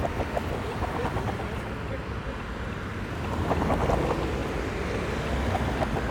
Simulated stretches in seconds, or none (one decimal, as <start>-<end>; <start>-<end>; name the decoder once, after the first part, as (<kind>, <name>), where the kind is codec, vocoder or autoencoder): none